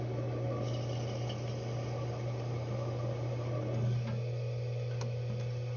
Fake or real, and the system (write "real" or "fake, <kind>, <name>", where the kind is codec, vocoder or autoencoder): real